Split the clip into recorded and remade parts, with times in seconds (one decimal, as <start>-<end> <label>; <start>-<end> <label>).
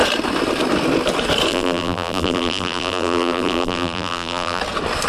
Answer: 0.0-1.5 recorded; 1.5-4.6 remade; 4.6-5.1 recorded